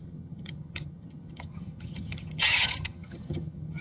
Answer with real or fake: fake